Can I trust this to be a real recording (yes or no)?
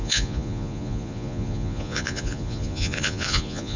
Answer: no